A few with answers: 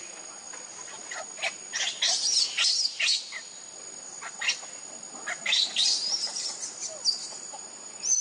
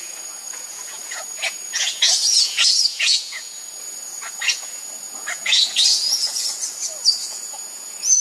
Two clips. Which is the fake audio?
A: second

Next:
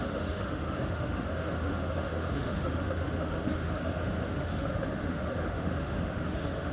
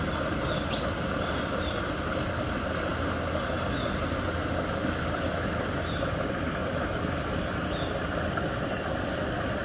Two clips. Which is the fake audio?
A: first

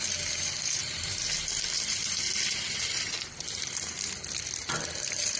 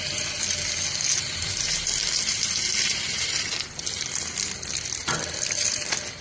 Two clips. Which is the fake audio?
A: first